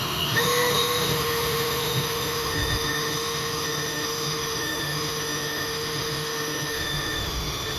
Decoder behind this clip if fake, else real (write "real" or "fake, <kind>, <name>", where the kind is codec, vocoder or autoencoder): fake, autoencoder, DAC-VAE